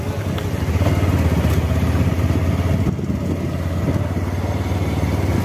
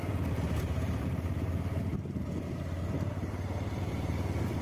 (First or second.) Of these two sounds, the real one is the first